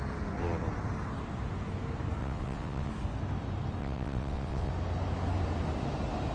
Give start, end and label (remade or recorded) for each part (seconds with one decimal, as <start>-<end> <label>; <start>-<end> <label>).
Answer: 0.0-2.2 recorded; 2.2-2.9 remade; 2.9-3.8 recorded; 3.8-4.7 remade; 4.7-6.3 recorded